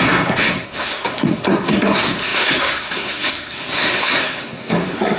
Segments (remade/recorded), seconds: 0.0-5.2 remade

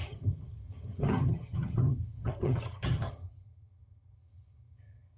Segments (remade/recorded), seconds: 0.0-5.2 remade